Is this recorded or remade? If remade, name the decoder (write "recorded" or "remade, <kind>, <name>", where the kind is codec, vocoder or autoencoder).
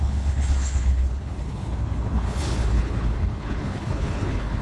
remade, codec, HILCodec